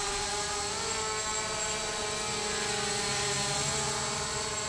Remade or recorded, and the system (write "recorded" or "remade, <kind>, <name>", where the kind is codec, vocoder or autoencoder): recorded